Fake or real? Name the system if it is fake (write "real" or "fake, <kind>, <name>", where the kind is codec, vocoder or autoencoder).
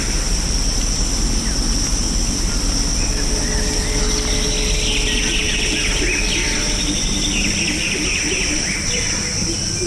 real